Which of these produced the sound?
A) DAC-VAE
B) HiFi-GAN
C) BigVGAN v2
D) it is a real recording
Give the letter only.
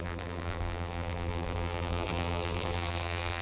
C